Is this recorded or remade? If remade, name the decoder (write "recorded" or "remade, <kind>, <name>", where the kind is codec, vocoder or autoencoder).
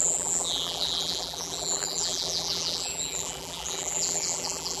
remade, vocoder, BigVGAN v2